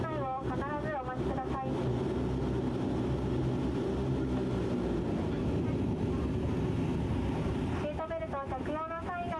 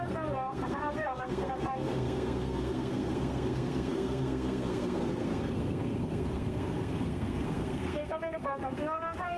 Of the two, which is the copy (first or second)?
second